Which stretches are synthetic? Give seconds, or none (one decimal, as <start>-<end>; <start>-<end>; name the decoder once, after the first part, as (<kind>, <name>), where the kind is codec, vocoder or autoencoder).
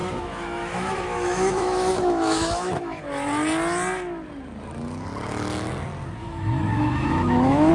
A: 0.0-3.0 (autoencoder, DAC-VAE); 6.2-7.7